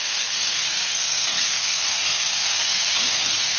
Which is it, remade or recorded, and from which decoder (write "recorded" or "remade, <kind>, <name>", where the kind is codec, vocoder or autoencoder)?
remade, codec, SNAC